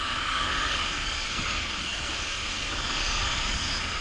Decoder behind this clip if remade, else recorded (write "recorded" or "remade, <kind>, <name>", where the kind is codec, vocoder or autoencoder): remade, codec, SNAC